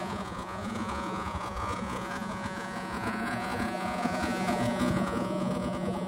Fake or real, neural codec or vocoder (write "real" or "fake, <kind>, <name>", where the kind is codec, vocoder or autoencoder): fake, vocoder, Vocos